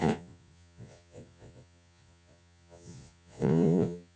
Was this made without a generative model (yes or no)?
no